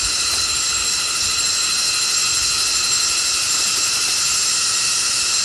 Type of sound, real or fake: real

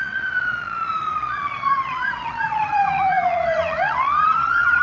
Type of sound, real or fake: fake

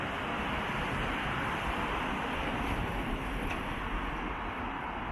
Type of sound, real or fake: fake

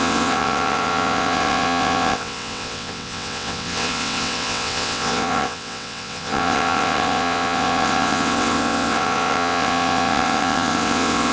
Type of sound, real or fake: fake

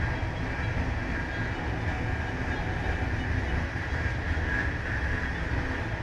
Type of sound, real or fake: real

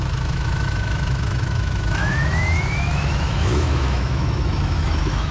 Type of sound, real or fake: fake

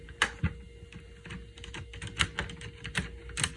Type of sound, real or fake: real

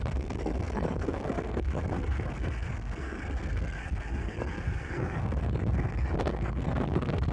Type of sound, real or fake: fake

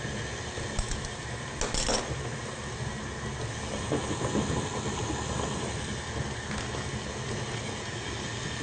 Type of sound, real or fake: real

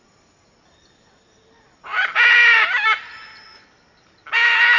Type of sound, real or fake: real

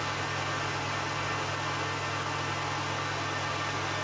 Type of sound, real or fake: real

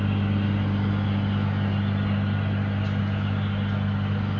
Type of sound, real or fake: real